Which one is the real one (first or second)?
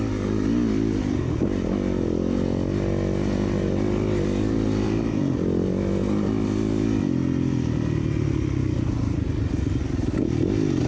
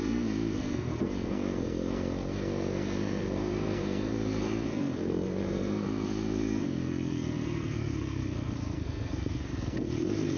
first